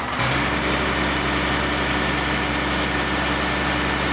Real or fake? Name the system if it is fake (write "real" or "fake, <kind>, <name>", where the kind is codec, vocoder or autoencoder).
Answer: real